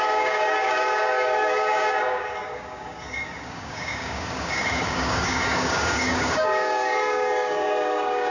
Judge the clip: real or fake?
fake